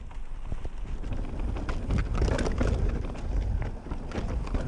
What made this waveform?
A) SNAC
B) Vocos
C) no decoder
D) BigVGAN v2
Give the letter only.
C